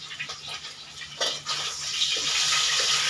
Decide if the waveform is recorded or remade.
recorded